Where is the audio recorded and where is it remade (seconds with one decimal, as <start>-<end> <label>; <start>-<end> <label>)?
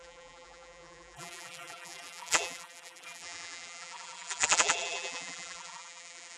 0.0-6.4 remade